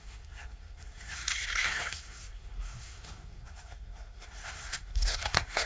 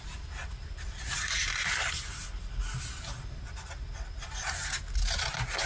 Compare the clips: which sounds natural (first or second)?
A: second